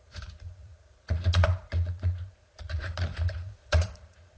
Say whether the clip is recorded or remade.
remade